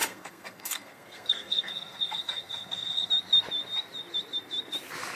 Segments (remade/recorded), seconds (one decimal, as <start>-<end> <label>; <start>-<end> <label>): 0.0-3.1 remade; 3.1-5.2 recorded